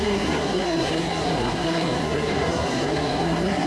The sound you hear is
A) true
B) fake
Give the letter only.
B